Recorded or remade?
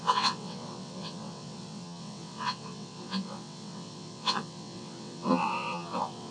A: remade